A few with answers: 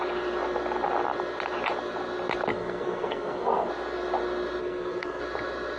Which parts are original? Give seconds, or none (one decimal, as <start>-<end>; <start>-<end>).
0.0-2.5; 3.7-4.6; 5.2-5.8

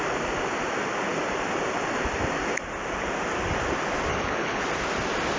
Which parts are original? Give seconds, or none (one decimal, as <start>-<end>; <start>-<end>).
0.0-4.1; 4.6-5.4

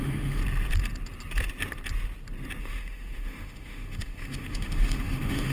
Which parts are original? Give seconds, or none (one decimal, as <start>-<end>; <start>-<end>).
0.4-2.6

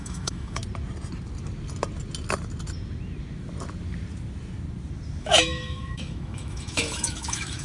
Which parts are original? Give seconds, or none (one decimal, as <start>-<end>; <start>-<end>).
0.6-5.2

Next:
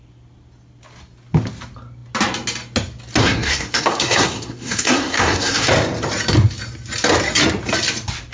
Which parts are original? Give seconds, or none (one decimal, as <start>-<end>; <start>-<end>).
0.0-3.2; 5.7-8.3

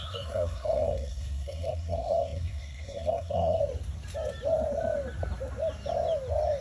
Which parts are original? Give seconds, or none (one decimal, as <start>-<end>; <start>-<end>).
3.6-6.6